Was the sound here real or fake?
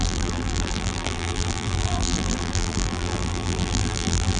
fake